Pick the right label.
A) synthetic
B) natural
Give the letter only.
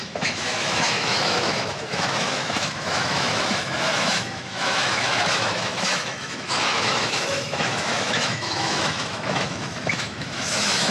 A